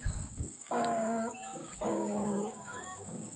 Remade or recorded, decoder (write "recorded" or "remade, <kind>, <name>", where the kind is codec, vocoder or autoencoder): remade, codec, DAC